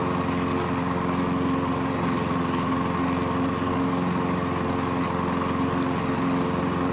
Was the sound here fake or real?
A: real